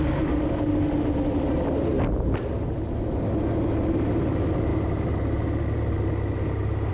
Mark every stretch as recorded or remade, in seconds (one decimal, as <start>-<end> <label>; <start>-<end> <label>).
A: 0.0-6.9 recorded